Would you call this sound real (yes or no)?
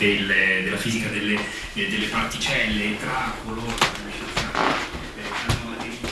yes